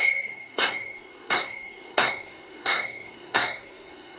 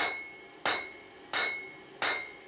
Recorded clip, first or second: second